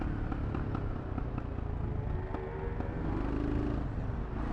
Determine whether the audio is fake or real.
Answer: real